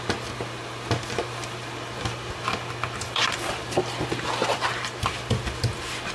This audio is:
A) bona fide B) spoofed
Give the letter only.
A